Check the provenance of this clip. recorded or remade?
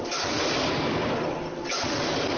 recorded